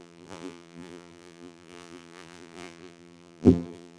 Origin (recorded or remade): remade